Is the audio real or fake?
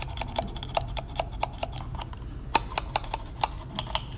real